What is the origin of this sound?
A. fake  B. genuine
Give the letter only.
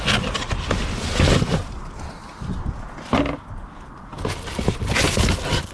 B